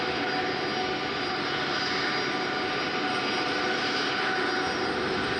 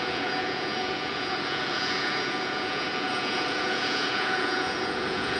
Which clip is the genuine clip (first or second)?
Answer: first